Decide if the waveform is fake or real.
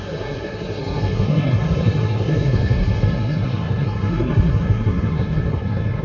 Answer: fake